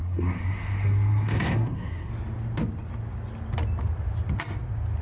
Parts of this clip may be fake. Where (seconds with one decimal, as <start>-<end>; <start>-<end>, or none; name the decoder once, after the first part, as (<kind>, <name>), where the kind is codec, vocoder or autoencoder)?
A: 0.0-2.1 (codec, SNAC)